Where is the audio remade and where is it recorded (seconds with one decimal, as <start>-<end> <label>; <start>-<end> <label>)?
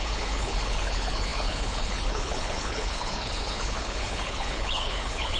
0.0-5.4 remade